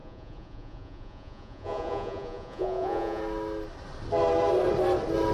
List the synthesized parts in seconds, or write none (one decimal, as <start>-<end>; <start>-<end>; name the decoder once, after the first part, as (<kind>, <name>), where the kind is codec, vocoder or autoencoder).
0.0-3.2 (vocoder, Vocos)